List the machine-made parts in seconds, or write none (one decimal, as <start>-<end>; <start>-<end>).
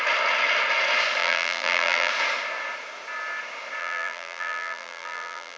1.2-2.1; 3.8-5.6